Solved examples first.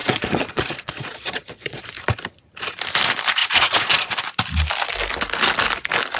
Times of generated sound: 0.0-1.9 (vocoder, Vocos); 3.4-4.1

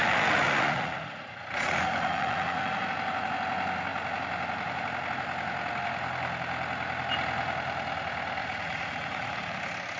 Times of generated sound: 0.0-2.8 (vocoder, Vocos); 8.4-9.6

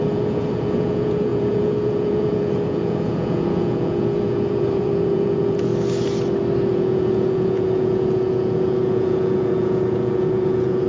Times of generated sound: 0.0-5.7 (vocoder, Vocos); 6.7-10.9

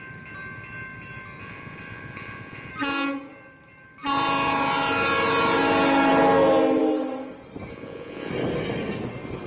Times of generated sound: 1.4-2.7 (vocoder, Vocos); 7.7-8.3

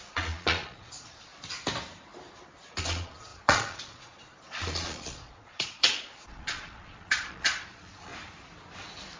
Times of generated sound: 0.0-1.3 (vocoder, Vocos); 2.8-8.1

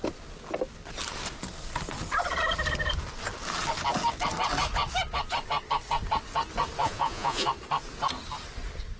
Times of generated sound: 6.8-7.5 (vocoder, Vocos)

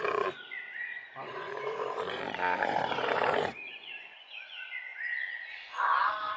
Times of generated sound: 0.0-6.4 (vocoder, Vocos)

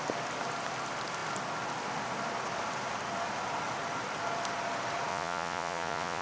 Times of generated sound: 5.1-6.2 (vocoder, Vocos)